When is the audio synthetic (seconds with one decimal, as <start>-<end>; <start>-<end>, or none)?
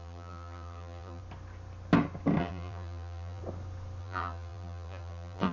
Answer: 0.0-1.2; 2.4-3.4; 4.0-5.5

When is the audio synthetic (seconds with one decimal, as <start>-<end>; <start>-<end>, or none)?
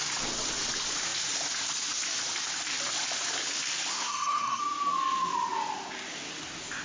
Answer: 3.9-4.6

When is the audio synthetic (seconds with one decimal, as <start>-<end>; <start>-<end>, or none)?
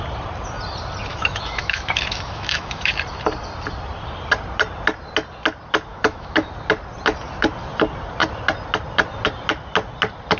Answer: 1.1-2.9; 5.9-6.5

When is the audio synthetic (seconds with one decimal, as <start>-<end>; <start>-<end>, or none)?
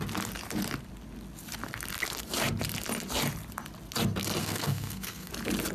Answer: 4.4-5.3